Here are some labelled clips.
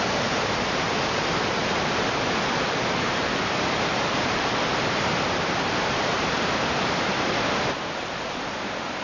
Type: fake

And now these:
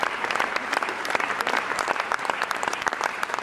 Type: fake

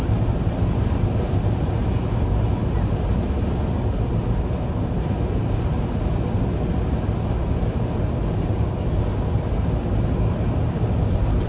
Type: real